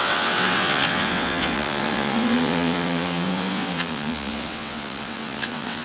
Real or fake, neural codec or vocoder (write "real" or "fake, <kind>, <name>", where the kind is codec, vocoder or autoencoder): fake, vocoder, WaveNeXt